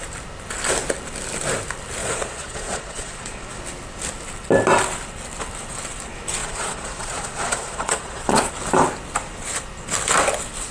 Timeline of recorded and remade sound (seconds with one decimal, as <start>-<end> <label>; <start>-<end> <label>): 0.0-2.0 recorded; 2.0-3.6 remade; 3.6-6.4 recorded; 6.4-8.5 remade; 8.5-10.7 recorded